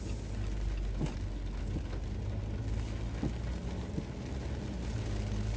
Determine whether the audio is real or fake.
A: real